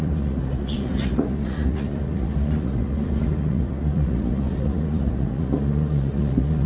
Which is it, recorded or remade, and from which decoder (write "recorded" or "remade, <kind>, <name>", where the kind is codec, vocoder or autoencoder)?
remade, vocoder, Vocos